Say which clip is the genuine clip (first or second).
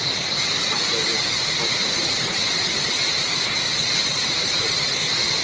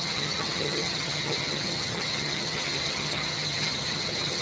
first